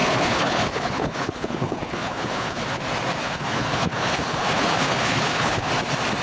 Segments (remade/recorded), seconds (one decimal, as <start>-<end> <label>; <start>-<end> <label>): 0.0-2.8 remade; 2.8-3.2 recorded; 3.2-5.7 remade; 5.7-6.2 recorded